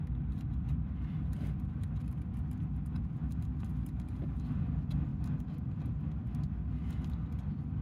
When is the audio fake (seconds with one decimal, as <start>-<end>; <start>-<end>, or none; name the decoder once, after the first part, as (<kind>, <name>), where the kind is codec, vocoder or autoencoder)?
none